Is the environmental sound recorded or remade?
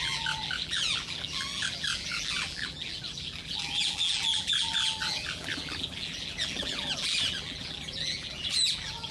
remade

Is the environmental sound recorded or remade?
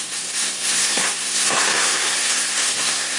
remade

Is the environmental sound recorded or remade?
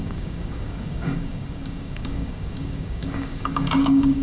remade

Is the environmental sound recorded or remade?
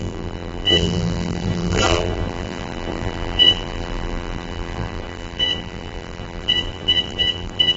remade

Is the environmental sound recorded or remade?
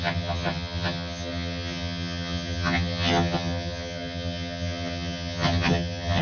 remade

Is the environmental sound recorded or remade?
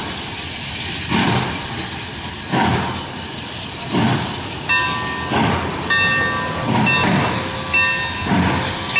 recorded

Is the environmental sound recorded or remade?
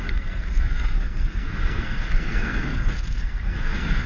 remade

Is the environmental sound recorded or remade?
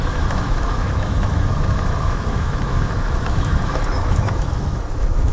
remade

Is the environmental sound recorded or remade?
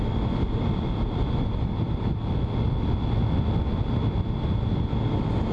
recorded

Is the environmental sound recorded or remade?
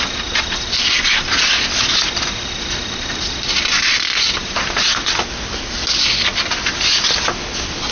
recorded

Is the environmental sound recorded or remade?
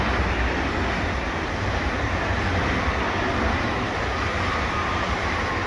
recorded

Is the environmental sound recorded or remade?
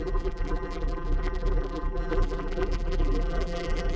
remade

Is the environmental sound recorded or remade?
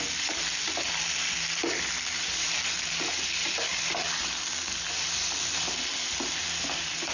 recorded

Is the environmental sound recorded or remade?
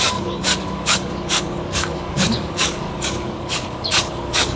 remade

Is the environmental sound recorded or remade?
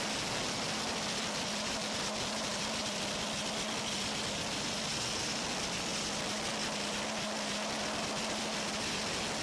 recorded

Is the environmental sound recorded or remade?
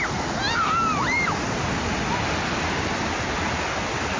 recorded